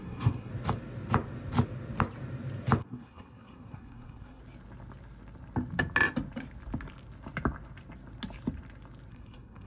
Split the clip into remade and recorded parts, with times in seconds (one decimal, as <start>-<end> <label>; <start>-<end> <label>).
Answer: 0.0-0.5 remade; 0.5-2.8 recorded; 2.8-4.4 remade; 4.4-9.1 recorded; 9.1-9.7 remade